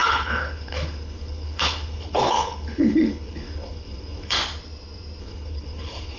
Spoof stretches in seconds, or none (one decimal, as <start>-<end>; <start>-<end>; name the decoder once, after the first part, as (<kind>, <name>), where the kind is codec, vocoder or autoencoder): 0.0-4.4 (codec, HILCodec); 5.2-6.2